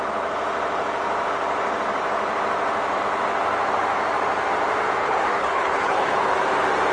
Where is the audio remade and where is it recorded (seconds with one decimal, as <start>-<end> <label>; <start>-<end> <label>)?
0.0-5.0 recorded; 5.0-6.3 remade; 6.3-6.9 recorded